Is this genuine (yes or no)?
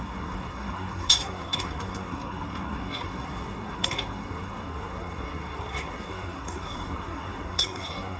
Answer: no